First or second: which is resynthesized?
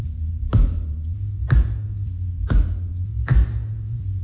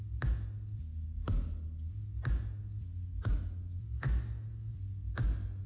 first